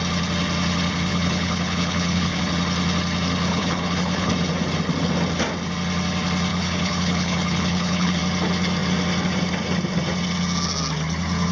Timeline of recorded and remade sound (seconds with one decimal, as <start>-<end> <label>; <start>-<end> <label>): 0.0-1.1 recorded; 1.1-2.4 remade; 2.4-3.5 recorded; 3.5-4.3 remade; 4.3-6.5 recorded; 6.5-8.2 remade; 8.2-11.5 recorded